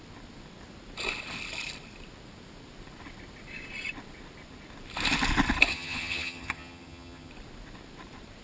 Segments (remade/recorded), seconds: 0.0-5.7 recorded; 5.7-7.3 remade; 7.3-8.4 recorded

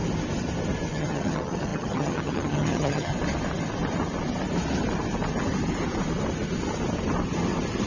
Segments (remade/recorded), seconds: 0.0-0.9 recorded; 0.9-3.1 remade; 3.1-7.9 recorded

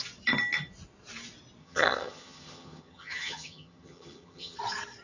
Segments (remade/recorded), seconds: 0.0-1.6 recorded; 1.6-4.6 remade; 4.6-5.0 recorded

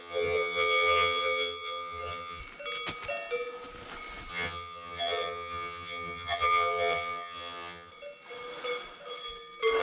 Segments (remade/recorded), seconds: 0.0-2.4 remade; 2.4-4.3 recorded; 4.3-7.9 remade; 7.9-9.8 recorded